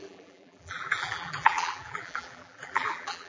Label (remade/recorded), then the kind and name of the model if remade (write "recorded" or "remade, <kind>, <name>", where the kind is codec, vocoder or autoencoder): remade, vocoder, BigVGAN v2